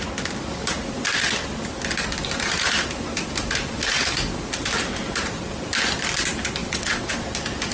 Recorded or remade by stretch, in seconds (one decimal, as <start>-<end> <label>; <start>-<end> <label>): 0.0-6.6 recorded; 6.6-7.1 remade; 7.1-7.7 recorded